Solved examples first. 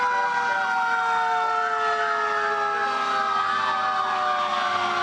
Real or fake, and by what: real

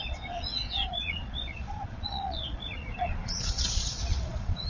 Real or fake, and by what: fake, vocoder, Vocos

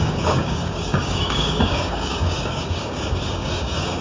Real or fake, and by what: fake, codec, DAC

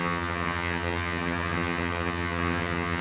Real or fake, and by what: fake, vocoder, HiFi-GAN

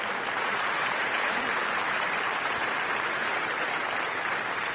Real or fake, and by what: fake, vocoder, BigVGAN v2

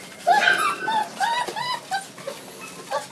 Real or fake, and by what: real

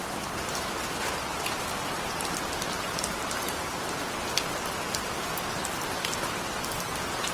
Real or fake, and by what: real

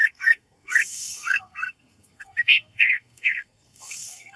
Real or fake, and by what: fake, codec, SNAC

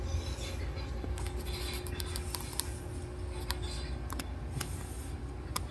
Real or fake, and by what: real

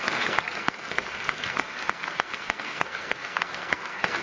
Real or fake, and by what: fake, codec, SNAC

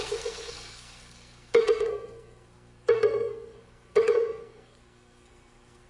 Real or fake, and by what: fake, codec, SNAC